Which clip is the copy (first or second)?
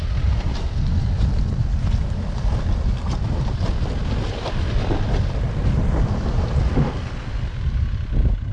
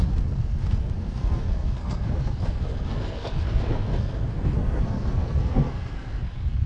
second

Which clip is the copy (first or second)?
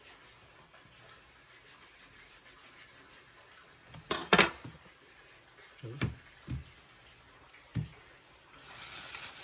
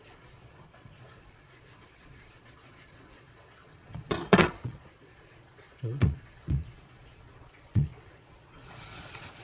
second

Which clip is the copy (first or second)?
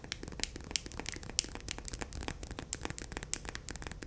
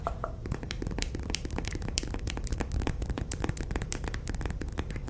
second